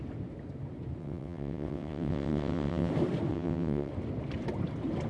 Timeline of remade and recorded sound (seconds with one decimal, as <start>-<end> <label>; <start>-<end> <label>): 0.0-1.0 recorded; 1.0-2.9 remade; 2.9-3.3 recorded; 3.3-3.9 remade; 3.9-5.1 recorded